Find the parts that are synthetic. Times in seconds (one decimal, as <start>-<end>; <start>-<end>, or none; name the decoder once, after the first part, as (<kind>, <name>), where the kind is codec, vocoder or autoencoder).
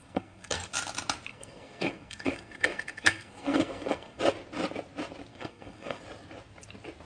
0.0-0.7 (codec, SNAC); 1.3-4.2; 5.3-6.0